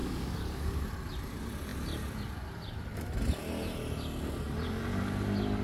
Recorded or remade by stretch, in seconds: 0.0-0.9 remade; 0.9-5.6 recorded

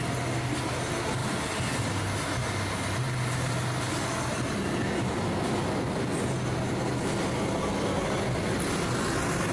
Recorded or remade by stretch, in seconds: 0.0-9.5 recorded